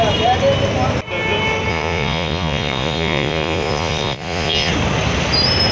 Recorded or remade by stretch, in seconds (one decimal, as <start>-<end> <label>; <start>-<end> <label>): 0.0-1.7 recorded; 1.7-4.7 remade; 4.7-5.7 recorded